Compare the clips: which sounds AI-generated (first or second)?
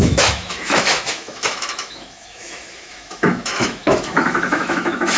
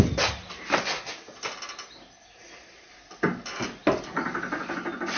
first